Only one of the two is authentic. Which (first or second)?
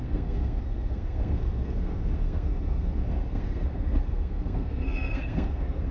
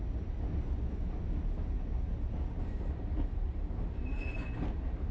second